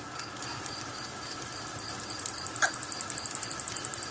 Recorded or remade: recorded